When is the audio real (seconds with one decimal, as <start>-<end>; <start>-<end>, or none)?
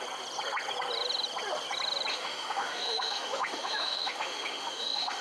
0.0-2.1